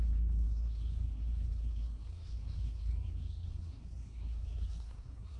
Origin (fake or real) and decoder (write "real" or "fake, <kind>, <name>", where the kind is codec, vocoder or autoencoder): fake, codec, SNAC